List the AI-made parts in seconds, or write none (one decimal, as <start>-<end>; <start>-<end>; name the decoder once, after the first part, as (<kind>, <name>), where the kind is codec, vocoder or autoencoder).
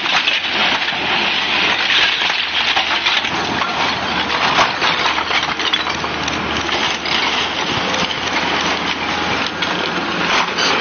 none